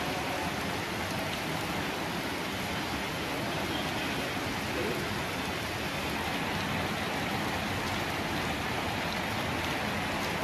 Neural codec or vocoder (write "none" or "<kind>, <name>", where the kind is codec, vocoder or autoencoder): none